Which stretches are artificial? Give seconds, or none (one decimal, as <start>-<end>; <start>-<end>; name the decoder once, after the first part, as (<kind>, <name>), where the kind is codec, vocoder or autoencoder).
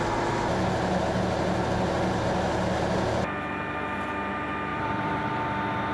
4.7-5.2 (vocoder, BigVGAN v2)